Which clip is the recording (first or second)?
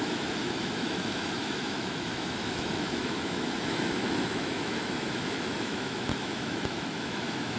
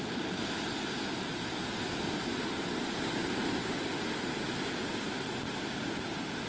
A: second